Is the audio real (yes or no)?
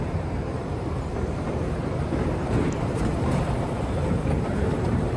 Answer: no